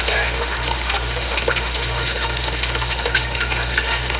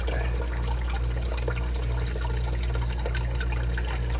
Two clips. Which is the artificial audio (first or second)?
first